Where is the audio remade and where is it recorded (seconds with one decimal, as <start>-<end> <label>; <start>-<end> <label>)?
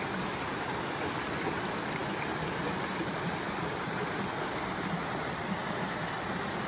0.0-6.7 recorded